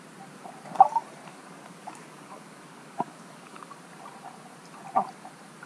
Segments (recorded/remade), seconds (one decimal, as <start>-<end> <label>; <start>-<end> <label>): 0.0-1.3 recorded; 1.3-3.7 remade; 3.7-5.7 recorded